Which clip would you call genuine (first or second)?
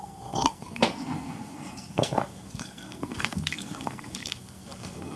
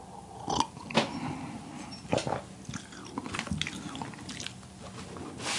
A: second